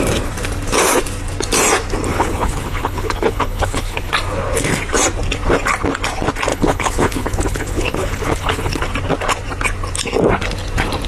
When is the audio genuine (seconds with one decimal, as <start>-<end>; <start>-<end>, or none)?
0.0-2.1; 4.1-6.5; 8.8-11.1